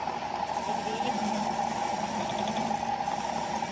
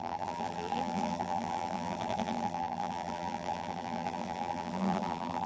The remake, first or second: second